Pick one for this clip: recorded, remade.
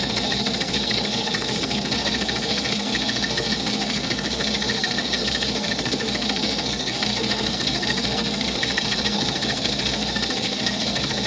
remade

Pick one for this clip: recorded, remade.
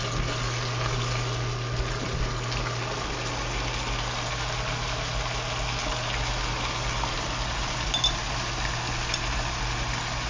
recorded